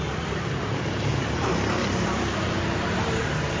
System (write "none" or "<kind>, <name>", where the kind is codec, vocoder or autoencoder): vocoder, BigVGAN v2